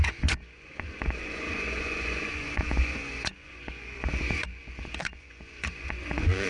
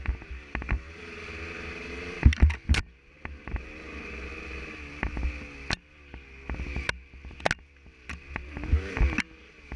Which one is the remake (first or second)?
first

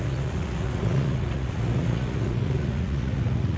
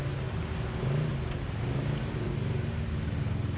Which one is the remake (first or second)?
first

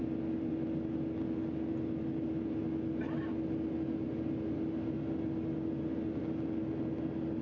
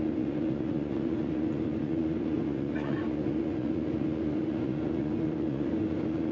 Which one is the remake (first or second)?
second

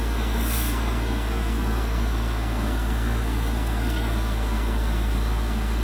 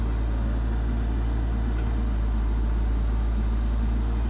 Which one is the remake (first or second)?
first